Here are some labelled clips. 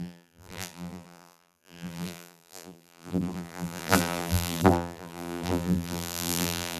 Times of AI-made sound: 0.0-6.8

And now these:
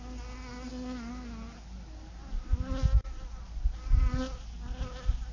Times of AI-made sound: none

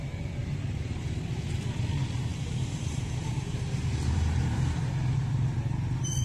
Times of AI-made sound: 0.4-1.4; 2.3-5.3